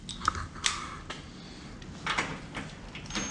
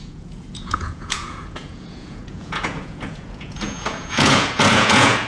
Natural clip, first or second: first